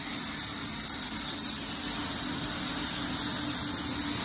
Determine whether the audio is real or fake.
real